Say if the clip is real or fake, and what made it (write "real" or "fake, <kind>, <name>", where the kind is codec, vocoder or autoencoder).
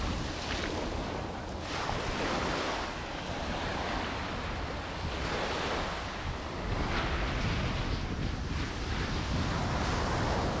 real